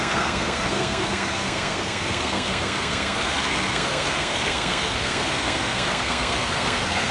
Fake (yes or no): yes